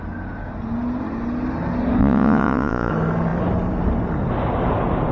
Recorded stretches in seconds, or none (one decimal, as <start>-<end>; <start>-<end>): 0.0-2.0; 2.9-5.1